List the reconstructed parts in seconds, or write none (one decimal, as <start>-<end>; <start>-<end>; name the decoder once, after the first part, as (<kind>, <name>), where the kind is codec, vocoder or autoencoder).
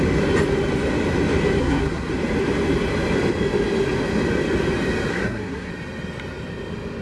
1.6-2.1 (codec, SNAC); 5.1-5.7